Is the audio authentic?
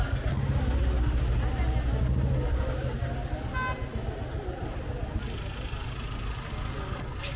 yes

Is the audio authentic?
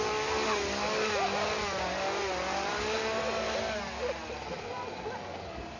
yes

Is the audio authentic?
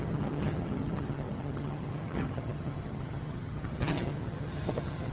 no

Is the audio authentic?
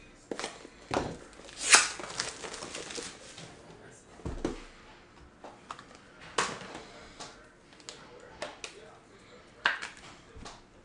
yes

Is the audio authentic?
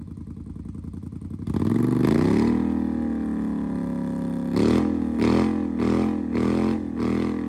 yes